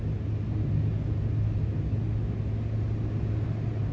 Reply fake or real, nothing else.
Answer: real